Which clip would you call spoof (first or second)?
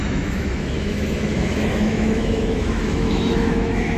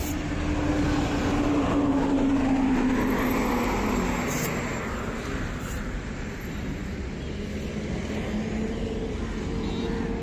first